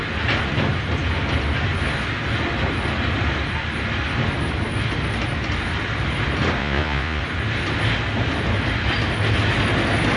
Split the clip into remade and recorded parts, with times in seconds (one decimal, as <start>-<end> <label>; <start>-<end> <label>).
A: 0.0-6.6 recorded; 6.6-7.2 remade; 7.2-10.2 recorded